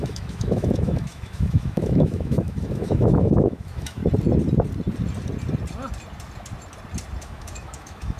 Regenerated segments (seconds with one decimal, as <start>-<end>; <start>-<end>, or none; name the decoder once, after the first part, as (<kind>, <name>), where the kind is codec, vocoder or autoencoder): 0.0-4.0 (autoencoder, DAC-VAE); 7.2-8.2